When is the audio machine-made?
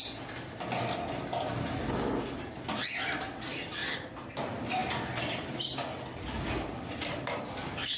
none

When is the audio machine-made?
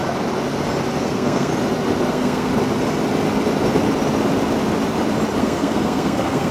1.0-1.5 (codec, SNAC); 2.1-2.5; 5.4-6.5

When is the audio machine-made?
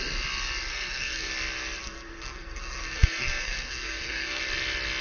0.7-1.3 (codec, SNAC); 1.8-4.4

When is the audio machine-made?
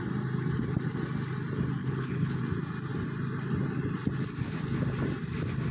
1.8-2.4 (codec, HILCodec)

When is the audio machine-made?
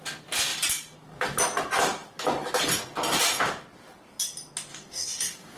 4.7-5.6 (codec, DAC)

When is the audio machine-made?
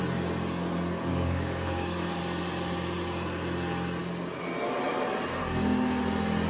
1.1-2.2 (codec, DAC); 5.4-6.0